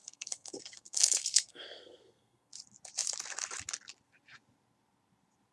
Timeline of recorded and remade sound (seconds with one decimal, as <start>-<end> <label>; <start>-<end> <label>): 0.0-2.5 remade; 2.5-5.5 recorded